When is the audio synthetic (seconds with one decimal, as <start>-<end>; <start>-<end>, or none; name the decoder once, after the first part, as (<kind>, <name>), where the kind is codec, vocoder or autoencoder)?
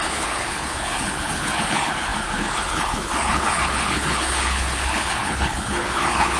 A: 0.0-6.4 (codec, HILCodec)